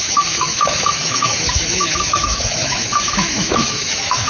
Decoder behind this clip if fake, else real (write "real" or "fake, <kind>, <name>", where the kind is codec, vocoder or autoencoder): fake, autoencoder, DAC-VAE